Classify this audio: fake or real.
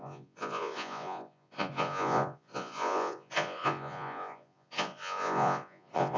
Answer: fake